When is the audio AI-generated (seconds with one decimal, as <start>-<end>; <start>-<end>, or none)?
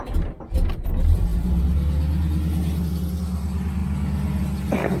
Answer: none